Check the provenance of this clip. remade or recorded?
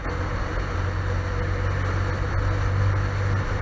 recorded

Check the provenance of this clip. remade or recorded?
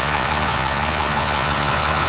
remade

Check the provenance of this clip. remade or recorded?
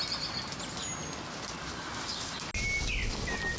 recorded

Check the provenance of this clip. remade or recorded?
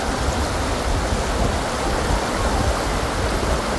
recorded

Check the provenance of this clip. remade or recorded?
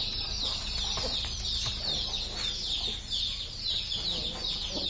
recorded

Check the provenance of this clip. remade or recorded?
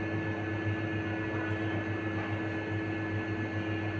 recorded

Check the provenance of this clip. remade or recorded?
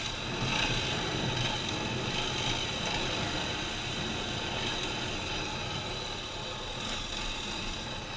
recorded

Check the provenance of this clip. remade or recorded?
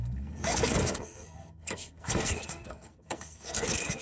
remade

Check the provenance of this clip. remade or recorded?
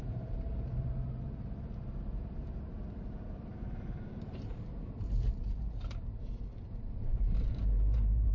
remade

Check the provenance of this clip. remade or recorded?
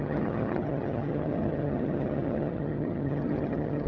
remade